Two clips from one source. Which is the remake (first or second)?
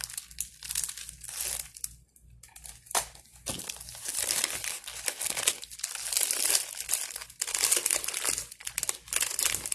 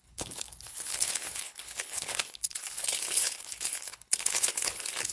second